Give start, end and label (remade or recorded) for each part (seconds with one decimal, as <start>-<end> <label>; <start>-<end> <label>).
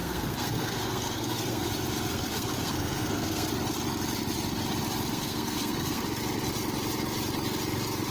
0.0-1.7 remade; 1.7-2.1 recorded; 2.1-3.5 remade; 3.5-5.1 recorded; 5.1-6.0 remade; 6.0-8.1 recorded